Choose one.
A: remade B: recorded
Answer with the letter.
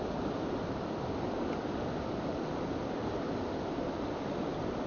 B